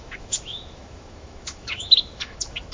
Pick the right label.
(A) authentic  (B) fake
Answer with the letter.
B